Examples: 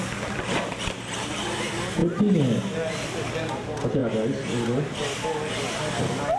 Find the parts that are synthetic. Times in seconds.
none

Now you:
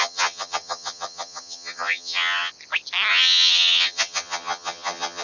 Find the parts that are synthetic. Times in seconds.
0.0-2.5 (vocoder, HiFi-GAN); 3.1-5.2

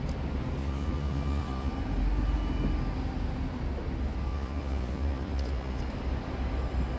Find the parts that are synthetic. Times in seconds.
0.6-1.7 (vocoder, Vocos); 4.3-5.8

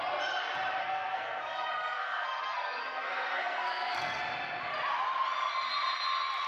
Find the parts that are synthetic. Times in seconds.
0.8-4.2 (codec, SNAC)

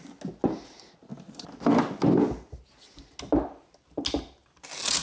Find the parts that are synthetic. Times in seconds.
none

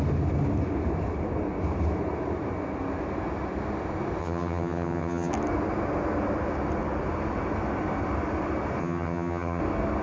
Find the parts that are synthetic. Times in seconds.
4.2-5.3 (vocoder, HiFi-GAN); 8.8-9.6

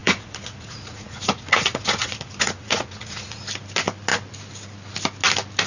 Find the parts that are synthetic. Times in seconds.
0.0-3.4 (vocoder, Vocos)